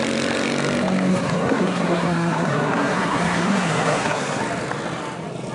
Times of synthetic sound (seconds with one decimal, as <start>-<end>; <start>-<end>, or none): 1.1-4.4